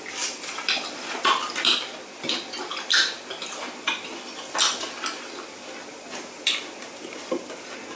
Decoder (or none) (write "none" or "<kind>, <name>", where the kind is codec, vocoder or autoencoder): none